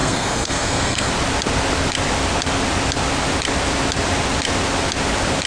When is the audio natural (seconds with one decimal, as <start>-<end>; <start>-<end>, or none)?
1.1-5.5